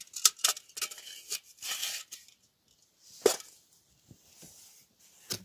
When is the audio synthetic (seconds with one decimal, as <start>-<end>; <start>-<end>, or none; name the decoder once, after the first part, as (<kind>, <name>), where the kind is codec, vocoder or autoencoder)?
none